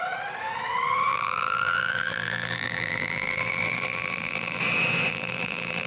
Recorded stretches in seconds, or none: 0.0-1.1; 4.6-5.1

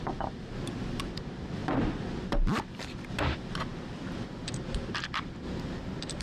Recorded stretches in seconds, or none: none

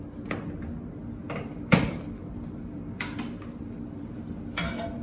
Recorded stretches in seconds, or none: 0.0-1.2; 4.2-5.0

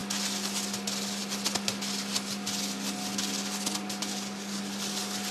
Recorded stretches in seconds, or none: 0.0-4.1; 4.6-5.3

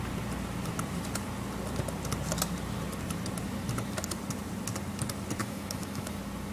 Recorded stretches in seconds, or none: 0.0-5.4; 6.1-6.5

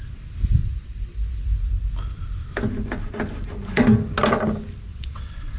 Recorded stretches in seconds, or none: 0.0-4.9

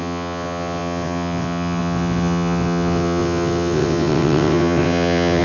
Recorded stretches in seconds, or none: none

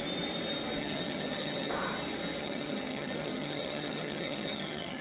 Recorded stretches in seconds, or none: 0.0-0.8; 1.7-2.4